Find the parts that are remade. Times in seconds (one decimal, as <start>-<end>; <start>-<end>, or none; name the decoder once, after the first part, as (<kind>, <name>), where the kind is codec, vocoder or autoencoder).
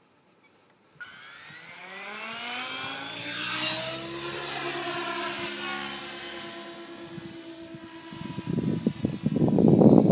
none